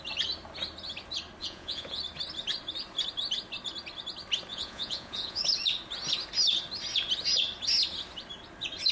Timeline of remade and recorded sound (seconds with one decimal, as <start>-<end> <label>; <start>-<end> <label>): 0.0-1.4 recorded; 1.4-2.0 remade; 2.0-4.5 recorded; 4.5-5.4 remade; 5.4-8.9 recorded